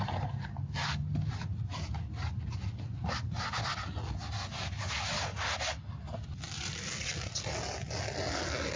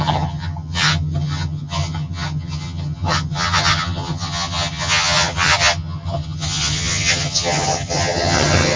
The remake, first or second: second